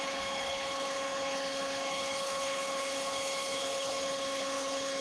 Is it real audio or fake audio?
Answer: fake